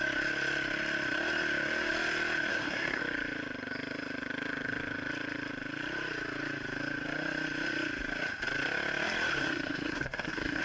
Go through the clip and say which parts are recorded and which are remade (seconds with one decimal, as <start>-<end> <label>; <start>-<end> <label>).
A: 0.0-2.5 recorded; 2.5-3.0 remade; 3.0-9.4 recorded; 9.4-10.6 remade